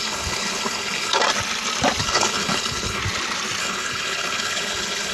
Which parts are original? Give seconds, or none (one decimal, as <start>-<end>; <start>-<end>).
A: 1.2-2.0; 3.0-3.6